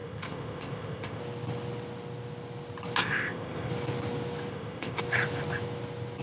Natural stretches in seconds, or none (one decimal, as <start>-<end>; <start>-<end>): 1.2-3.0; 3.7-4.5; 5.0-6.2